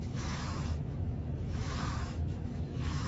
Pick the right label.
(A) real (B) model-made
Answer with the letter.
B